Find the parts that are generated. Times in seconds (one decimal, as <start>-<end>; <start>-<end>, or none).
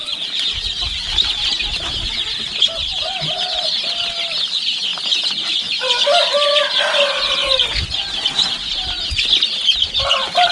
none